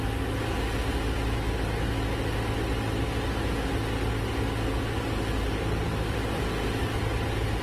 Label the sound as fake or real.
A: real